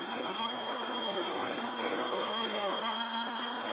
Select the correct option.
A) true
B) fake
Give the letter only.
B